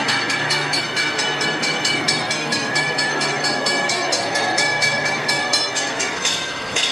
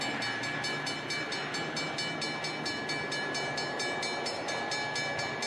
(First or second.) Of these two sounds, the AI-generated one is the first